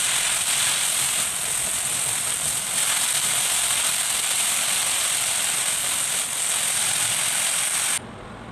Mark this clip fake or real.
real